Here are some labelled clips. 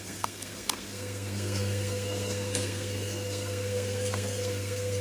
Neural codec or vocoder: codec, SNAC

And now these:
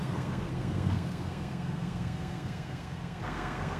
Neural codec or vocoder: codec, SNAC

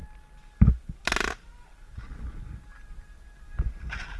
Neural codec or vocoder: none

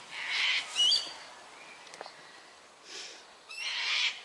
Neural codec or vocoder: none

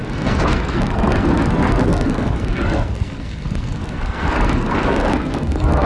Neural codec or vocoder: codec, SNAC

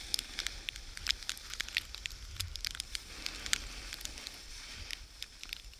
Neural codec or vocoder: none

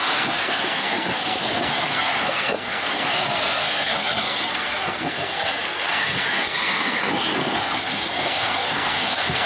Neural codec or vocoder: codec, SNAC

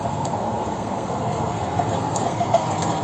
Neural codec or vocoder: codec, SNAC